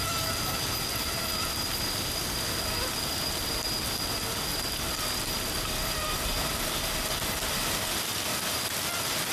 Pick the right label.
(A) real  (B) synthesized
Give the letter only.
A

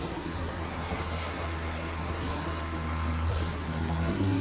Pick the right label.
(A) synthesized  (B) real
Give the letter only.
A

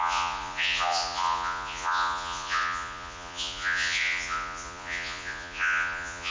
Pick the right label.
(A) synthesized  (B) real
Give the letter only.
A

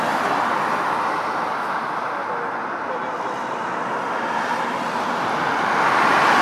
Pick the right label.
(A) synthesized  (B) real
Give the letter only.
B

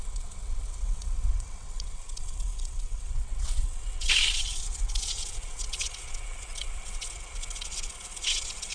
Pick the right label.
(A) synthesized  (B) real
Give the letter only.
A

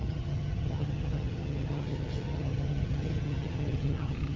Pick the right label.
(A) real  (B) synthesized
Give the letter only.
B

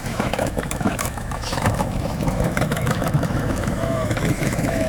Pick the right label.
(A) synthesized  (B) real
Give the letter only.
A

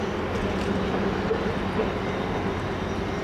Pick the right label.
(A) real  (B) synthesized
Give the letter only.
A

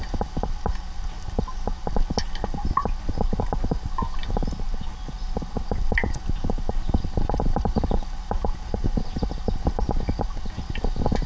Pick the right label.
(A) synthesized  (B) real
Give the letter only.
B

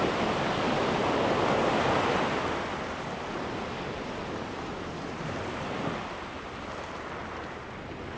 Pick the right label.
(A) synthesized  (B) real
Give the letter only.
B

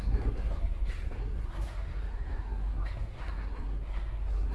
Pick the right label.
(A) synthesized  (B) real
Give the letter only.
A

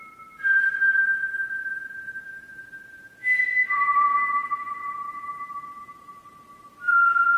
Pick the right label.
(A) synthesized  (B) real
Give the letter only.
B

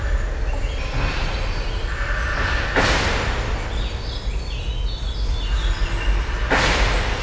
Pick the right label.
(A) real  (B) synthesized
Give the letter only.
A